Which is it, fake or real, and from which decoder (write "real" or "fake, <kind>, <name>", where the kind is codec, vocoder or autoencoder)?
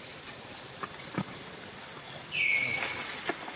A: real